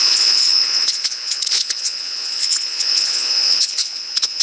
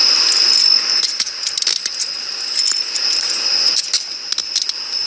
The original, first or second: second